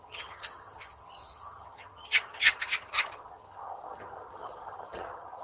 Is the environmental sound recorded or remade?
remade